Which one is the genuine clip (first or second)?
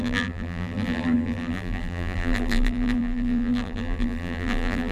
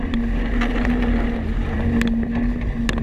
second